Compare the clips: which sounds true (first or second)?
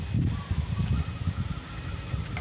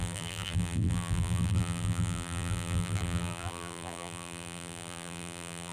first